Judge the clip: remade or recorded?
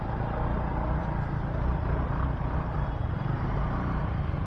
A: remade